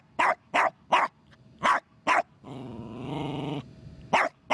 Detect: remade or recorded recorded